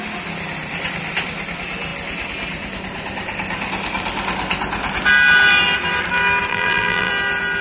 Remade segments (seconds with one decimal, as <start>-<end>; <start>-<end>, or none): 6.5-7.1